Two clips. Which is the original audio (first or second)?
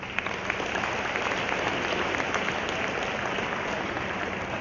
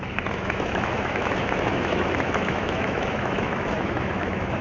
first